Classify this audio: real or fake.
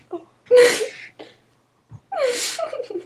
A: real